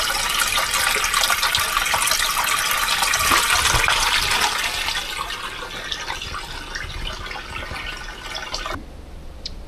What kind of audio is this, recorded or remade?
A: recorded